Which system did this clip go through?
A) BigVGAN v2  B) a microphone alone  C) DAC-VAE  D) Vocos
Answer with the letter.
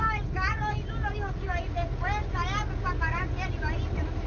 B